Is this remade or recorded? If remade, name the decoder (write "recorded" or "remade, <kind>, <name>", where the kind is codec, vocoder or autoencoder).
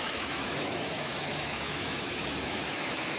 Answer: remade, autoencoder, DAC-VAE